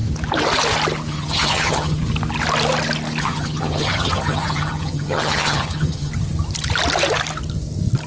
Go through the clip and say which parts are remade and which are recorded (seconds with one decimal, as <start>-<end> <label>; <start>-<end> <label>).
0.0-1.1 recorded; 1.1-2.0 remade; 2.0-3.2 recorded; 3.2-6.1 remade; 6.1-8.1 recorded